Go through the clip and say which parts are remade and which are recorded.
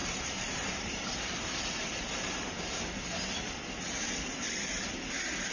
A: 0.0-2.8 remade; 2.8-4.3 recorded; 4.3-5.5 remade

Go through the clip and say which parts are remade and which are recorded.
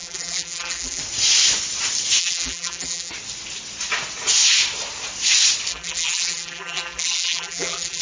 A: 0.0-1.0 remade; 1.0-2.2 recorded; 2.2-3.1 remade; 3.1-5.7 recorded; 5.7-8.0 remade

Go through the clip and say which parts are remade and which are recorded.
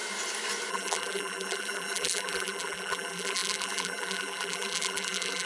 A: 0.0-0.7 recorded; 0.7-5.5 remade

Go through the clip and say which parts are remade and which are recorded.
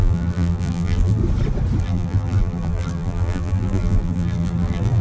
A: 0.0-1.2 remade; 1.2-1.8 recorded; 1.8-5.0 remade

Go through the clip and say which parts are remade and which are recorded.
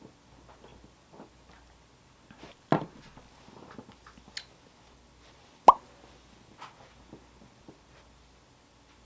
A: 0.0-9.1 recorded